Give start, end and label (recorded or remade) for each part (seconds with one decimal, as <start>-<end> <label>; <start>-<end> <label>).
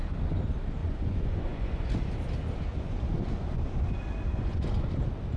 0.0-0.8 recorded; 0.8-1.9 remade; 1.9-2.7 recorded; 2.7-3.7 remade; 3.7-4.3 recorded; 4.3-4.9 remade; 4.9-5.4 recorded